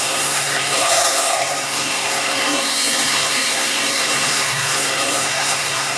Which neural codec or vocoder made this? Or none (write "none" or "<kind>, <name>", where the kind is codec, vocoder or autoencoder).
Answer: codec, SNAC